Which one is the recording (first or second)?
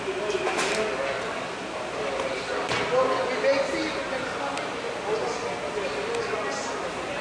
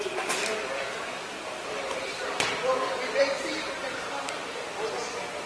first